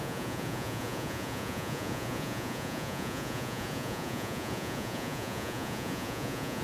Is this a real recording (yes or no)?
no